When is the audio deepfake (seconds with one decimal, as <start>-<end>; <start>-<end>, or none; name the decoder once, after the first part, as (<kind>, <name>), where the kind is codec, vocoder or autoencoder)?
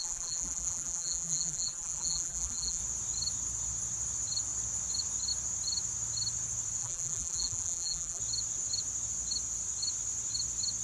0.0-2.8 (vocoder, BigVGAN v2); 6.8-8.2